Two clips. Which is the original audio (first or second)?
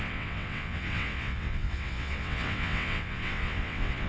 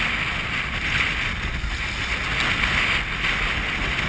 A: second